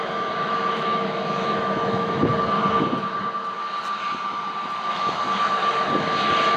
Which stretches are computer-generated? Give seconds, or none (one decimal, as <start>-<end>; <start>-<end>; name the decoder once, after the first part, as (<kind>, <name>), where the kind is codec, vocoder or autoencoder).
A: 0.0-2.3 (autoencoder, DAC-VAE); 4.9-5.6